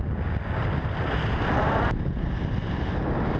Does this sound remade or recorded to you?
recorded